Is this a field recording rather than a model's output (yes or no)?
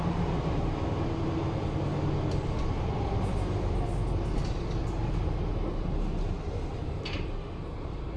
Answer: yes